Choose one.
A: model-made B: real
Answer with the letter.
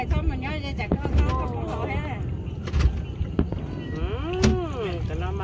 B